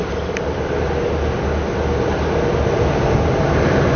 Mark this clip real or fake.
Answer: real